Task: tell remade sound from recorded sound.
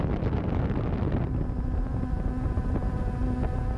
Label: recorded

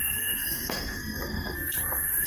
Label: remade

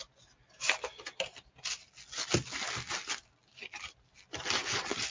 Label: recorded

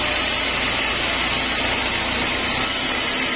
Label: recorded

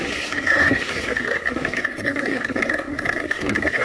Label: remade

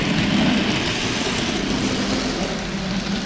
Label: recorded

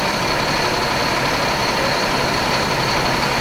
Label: recorded